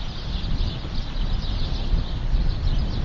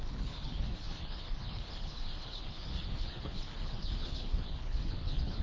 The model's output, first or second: second